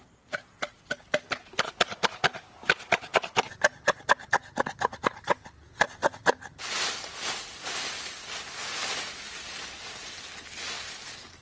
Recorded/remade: recorded